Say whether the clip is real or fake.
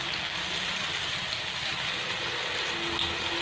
real